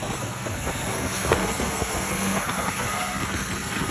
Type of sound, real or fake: fake